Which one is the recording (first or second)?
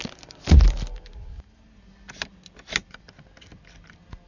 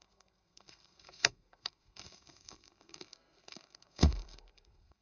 first